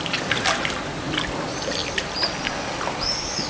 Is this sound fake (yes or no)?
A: no